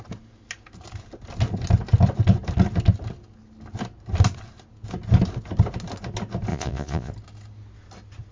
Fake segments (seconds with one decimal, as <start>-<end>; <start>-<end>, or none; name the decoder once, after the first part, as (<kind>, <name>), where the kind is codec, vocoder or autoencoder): 6.5-7.1 (vocoder, Vocos)